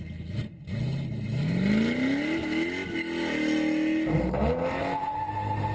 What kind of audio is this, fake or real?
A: real